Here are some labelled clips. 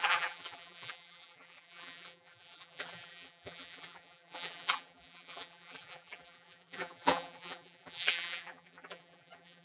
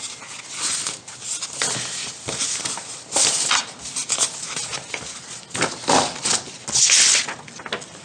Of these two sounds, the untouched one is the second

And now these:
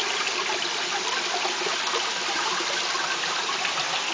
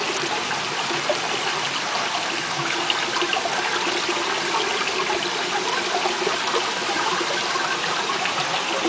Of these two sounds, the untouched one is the second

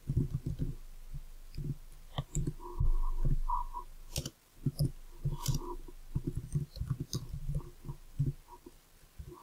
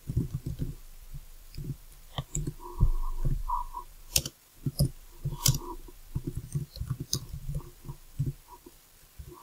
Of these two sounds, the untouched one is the first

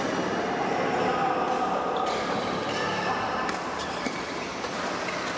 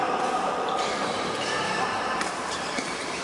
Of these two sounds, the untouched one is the first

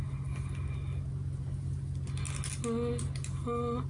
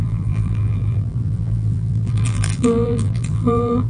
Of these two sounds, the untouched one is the first